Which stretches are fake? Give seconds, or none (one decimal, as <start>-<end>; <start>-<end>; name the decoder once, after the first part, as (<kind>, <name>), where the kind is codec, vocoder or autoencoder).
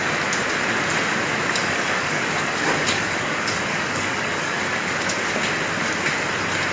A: 1.6-4.9 (codec, DAC)